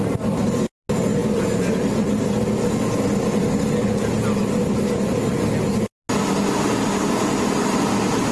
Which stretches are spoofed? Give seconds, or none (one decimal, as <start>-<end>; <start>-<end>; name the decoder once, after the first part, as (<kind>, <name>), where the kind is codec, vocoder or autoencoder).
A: none

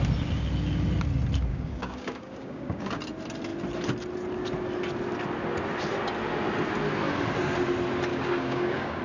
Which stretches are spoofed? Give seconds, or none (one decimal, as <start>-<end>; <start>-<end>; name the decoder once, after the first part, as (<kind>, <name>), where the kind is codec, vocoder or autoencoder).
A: 1.5-3.0 (codec, DAC); 8.1-9.0

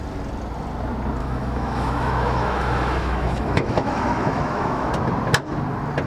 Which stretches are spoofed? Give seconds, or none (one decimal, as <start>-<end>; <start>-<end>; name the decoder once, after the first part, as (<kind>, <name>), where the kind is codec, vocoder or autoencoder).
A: 1.2-4.9 (autoencoder, DAC-VAE)

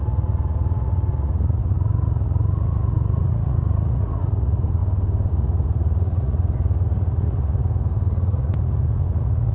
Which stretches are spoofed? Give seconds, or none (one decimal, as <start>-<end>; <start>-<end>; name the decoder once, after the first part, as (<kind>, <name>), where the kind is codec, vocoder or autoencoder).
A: 0.0-4.8 (vocoder, Vocos); 5.3-9.5